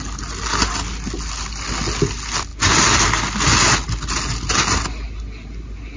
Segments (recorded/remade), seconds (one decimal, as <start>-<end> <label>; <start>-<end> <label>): 0.0-6.0 recorded